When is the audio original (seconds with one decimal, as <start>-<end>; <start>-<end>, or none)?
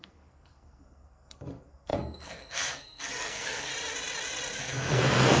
3.7-4.6